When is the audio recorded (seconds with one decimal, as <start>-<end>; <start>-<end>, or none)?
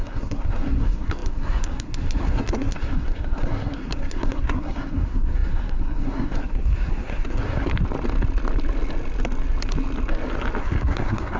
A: 7.7-10.6